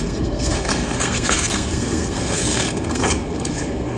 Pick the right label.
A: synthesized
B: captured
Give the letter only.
A